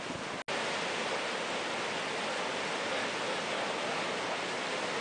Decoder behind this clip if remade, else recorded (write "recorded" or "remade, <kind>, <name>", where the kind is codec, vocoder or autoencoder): recorded